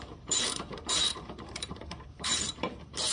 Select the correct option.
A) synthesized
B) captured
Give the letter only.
A